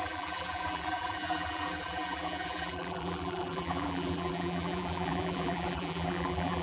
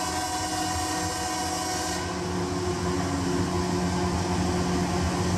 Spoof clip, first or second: first